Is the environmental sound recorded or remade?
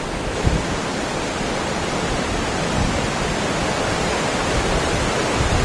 recorded